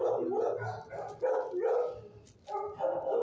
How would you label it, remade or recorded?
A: recorded